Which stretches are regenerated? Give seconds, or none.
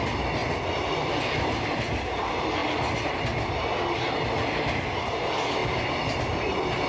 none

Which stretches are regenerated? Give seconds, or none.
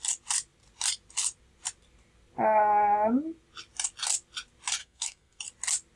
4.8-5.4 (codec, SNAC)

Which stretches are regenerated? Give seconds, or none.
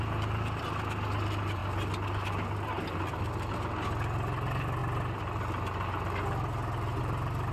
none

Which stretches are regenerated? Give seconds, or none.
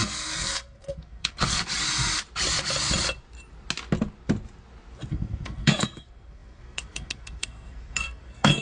0.0-1.6 (codec, SNAC); 5.1-8.6